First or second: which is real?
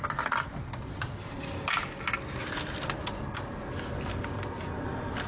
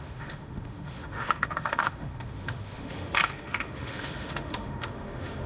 first